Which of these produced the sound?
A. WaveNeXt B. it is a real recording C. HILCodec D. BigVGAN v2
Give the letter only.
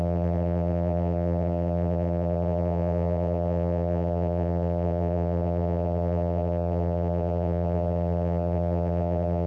D